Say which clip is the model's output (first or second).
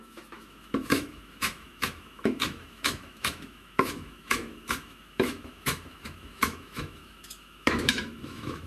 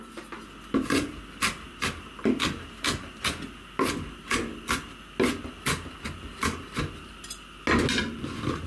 first